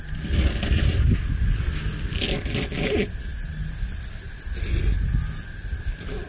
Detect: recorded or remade recorded